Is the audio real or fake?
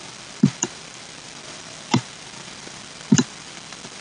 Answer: fake